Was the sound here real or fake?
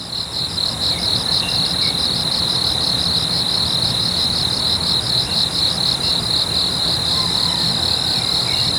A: real